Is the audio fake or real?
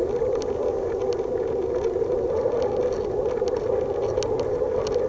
real